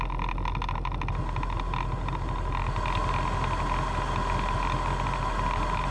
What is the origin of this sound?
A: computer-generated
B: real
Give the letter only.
B